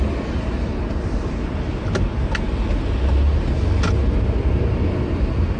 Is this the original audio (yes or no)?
yes